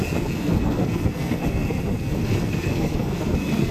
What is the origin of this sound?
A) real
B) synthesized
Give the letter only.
B